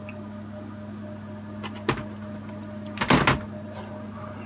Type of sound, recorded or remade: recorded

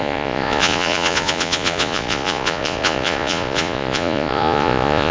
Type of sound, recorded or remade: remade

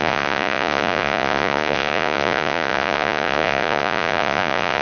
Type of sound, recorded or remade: remade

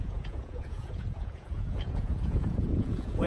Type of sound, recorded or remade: remade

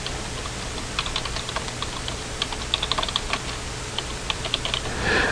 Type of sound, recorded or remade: recorded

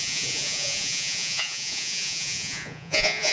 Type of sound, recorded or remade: remade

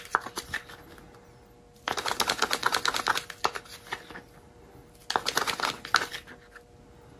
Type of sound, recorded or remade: recorded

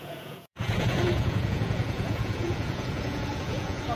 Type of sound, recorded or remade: remade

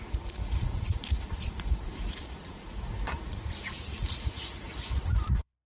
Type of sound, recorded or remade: remade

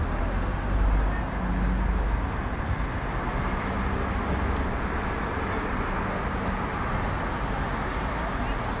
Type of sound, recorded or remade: recorded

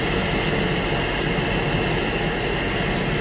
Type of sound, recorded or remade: recorded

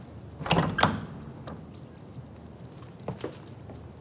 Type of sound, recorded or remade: recorded